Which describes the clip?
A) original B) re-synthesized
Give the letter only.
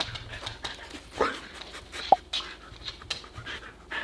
A